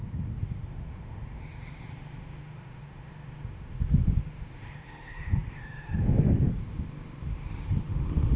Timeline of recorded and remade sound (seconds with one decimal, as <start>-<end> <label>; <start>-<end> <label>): 0.0-8.4 remade